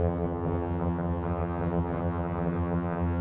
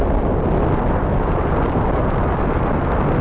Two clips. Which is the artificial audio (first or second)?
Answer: first